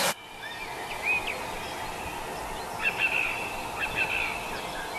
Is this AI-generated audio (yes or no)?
no